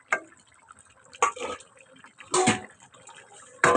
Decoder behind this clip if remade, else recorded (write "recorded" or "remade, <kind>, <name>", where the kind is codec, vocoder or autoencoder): recorded